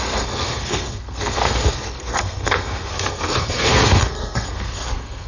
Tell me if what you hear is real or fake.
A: fake